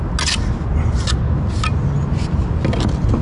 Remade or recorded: recorded